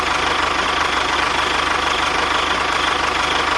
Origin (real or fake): real